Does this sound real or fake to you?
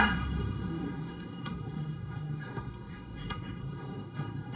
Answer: fake